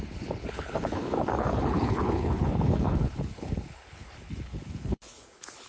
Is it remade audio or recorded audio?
remade